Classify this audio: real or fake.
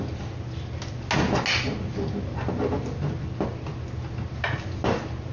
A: real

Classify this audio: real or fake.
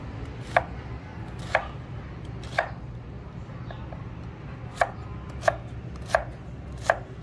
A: real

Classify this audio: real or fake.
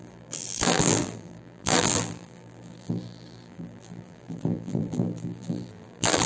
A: fake